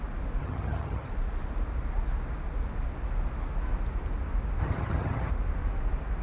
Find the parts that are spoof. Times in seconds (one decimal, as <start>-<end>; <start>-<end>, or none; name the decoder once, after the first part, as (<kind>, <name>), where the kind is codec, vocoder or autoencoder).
0.4-1.1 (vocoder, HiFi-GAN); 4.6-5.3